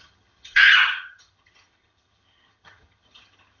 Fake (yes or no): yes